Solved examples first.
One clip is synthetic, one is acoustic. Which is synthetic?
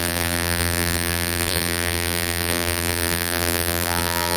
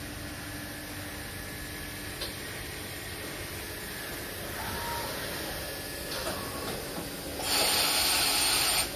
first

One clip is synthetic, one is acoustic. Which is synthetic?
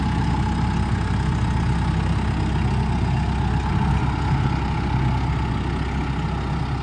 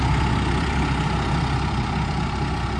second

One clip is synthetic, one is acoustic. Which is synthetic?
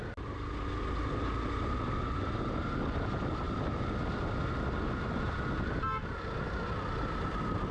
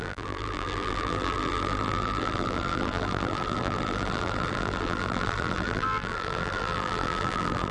second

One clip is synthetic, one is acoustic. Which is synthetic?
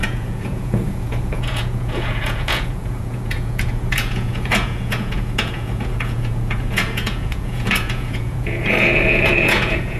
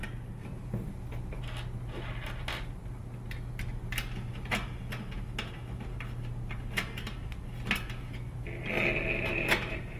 first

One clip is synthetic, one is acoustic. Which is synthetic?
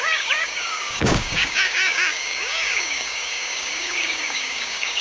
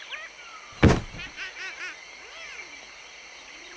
first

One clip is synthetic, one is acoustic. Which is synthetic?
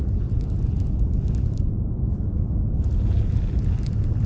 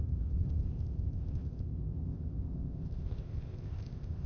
second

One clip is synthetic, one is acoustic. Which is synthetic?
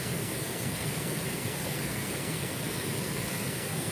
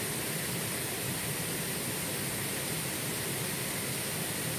first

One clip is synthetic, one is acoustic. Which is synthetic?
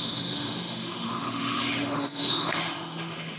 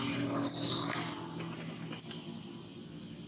first